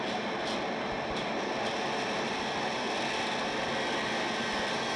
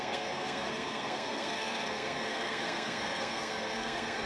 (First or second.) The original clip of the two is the first